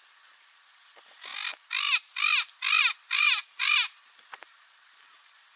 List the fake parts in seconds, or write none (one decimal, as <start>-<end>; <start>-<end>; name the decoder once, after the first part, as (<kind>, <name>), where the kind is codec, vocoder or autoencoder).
0.0-5.6 (vocoder, BigVGAN v2)